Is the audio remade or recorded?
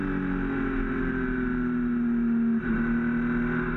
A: recorded